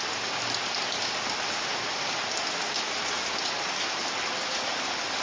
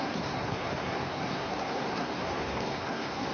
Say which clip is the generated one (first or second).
second